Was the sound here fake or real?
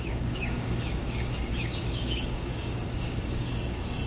fake